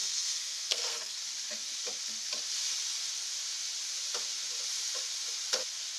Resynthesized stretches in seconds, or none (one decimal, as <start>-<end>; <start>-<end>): 0.0-1.2